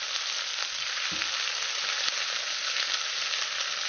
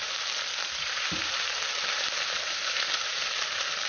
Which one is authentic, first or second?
first